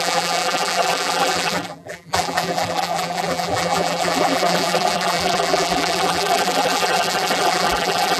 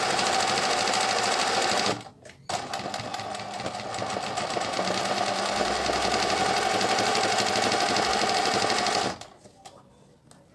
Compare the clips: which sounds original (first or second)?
second